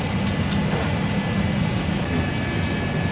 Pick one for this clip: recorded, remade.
recorded